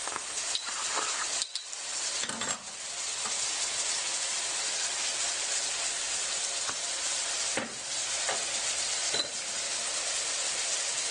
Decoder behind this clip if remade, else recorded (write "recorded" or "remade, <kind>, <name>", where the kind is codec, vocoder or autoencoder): recorded